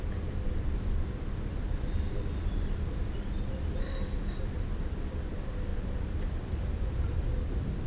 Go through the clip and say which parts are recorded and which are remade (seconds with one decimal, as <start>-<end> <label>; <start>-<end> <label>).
0.0-7.9 recorded